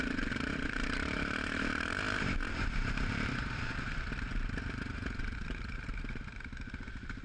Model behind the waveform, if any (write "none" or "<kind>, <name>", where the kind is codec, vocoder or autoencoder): vocoder, BigVGAN v2